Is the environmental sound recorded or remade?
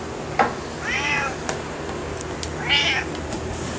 recorded